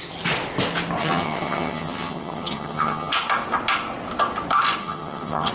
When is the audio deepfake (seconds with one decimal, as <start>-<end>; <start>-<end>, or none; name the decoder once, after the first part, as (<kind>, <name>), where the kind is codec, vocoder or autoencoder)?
1.0-3.1 (vocoder, HiFi-GAN); 4.8-5.5

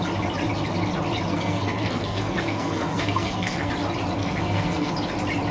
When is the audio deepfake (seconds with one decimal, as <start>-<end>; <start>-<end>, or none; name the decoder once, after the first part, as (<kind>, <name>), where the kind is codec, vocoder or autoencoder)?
1.3-3.7 (codec, SNAC); 4.2-4.9

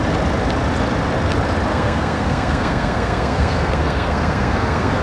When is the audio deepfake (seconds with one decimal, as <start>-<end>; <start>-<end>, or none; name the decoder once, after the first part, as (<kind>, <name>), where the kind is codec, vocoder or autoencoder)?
1.7-5.0 (codec, SNAC)

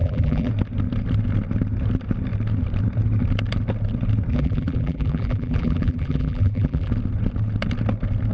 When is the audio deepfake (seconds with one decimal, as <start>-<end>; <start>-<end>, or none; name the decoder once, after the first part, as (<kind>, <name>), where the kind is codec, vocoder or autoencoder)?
0.0-0.5 (vocoder, BigVGAN v2); 4.3-6.9

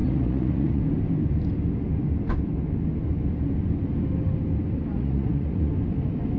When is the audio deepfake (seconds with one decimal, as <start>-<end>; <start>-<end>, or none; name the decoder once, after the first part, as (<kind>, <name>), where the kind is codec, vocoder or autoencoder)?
0.0-0.8 (vocoder, Vocos); 4.9-5.7

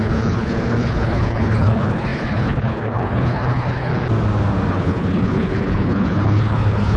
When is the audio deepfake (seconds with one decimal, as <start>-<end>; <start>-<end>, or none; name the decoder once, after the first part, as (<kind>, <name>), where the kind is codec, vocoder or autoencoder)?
0.0-3.9 (codec, HILCodec); 4.7-7.0

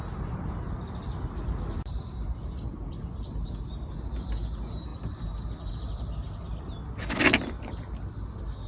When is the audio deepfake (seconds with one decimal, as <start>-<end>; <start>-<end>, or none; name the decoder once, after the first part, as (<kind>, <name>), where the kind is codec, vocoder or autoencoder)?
none